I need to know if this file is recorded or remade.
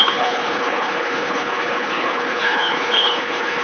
remade